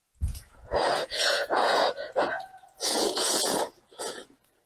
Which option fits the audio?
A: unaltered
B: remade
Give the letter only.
B